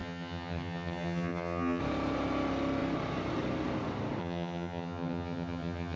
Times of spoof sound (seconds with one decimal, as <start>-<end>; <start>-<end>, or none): 0.0-1.8; 4.2-6.0